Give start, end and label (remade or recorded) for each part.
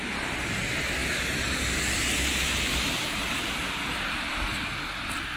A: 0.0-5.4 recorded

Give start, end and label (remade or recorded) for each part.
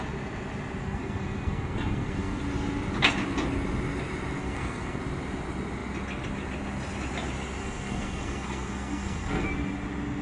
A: 0.0-0.8 recorded; 0.8-2.4 remade; 2.4-4.4 recorded; 4.4-5.0 remade; 5.0-7.6 recorded; 7.6-9.5 remade; 9.5-10.2 recorded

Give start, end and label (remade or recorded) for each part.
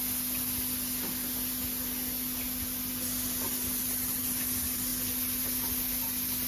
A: 0.0-6.5 recorded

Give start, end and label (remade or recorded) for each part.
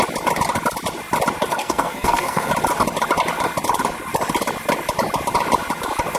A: 0.0-1.5 recorded; 1.5-2.5 remade; 2.5-6.2 recorded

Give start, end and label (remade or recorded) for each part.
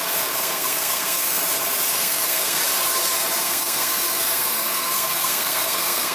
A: 0.0-1.4 remade; 1.4-1.9 recorded; 1.9-2.6 remade; 2.6-3.4 recorded; 3.4-6.1 remade